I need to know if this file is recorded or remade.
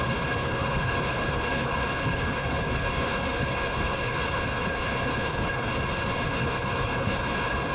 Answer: remade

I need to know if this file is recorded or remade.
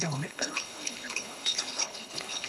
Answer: remade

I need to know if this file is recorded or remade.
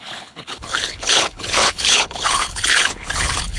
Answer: remade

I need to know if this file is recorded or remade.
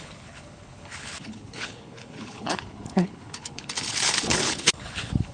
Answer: remade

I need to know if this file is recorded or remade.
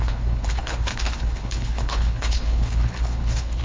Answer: remade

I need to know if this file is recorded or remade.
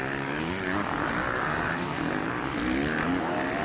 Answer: recorded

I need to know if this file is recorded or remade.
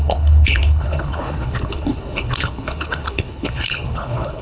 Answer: remade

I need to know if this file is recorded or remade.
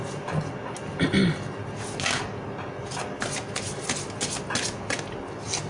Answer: recorded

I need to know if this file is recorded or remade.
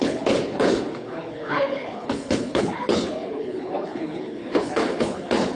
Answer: remade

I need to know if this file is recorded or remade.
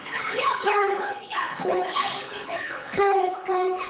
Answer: remade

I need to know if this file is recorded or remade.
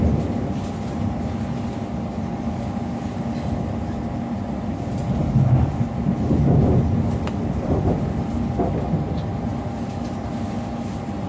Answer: recorded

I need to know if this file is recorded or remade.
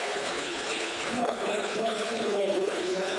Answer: remade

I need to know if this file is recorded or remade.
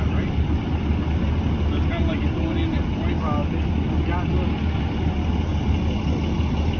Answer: recorded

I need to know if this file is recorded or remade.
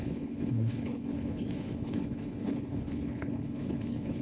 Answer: remade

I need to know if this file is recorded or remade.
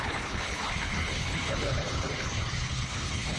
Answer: remade